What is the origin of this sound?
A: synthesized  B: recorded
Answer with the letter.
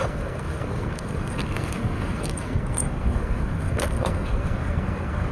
A